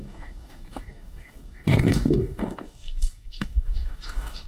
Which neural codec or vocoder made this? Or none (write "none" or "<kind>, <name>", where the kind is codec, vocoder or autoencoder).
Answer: codec, DAC